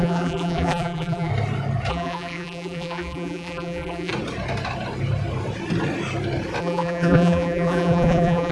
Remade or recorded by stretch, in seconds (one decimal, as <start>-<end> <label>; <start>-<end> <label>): 0.0-1.3 remade; 1.3-1.9 recorded; 1.9-4.1 remade; 4.1-6.6 recorded; 6.6-8.5 remade

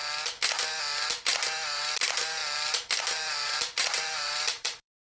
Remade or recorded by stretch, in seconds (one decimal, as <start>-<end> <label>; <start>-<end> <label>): 0.0-2.4 recorded; 2.4-5.1 remade

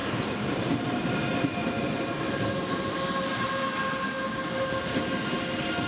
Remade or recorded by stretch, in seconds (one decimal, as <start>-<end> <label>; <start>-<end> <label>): 0.0-3.5 remade; 3.5-5.9 recorded